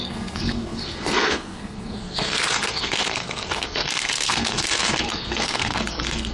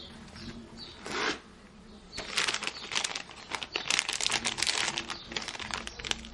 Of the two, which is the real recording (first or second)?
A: second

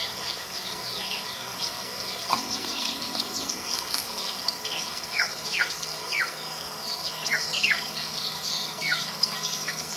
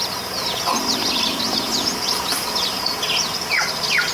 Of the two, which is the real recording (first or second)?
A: second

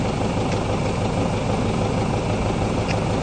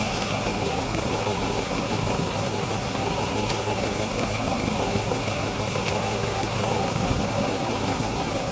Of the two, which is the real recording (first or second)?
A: first